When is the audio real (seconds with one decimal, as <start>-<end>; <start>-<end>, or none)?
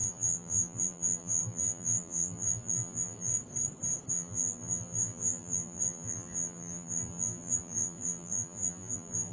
3.3-4.1